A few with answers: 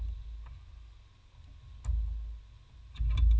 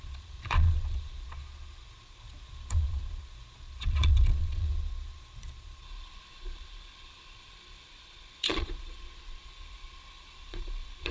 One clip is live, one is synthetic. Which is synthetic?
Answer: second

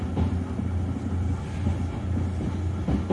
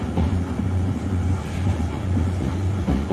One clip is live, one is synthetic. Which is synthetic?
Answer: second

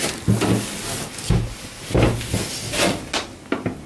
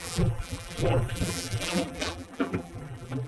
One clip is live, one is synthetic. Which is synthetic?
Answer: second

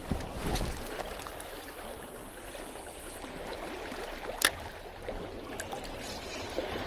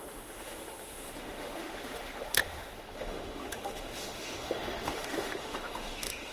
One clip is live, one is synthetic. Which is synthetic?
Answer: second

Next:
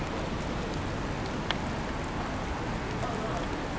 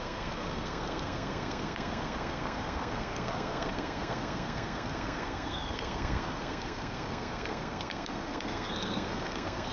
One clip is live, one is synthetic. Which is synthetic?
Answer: second